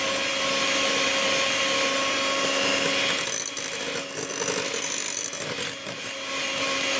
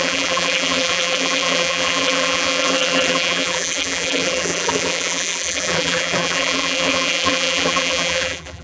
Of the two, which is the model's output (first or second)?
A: second